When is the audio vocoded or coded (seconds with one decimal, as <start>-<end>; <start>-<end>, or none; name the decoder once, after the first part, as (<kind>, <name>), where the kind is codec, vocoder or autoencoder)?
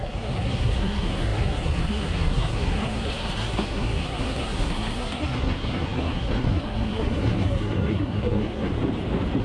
0.0-8.7 (codec, SNAC)